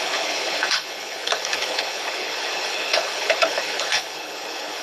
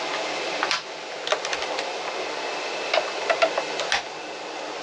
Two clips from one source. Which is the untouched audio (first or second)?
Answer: second